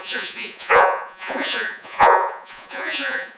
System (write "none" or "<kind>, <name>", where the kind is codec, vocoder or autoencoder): vocoder, Vocos